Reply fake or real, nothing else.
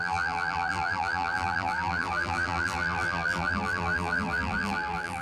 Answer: fake